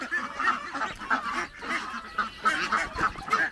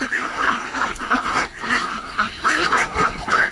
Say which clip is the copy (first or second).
second